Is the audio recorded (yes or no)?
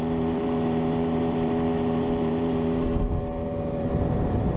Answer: no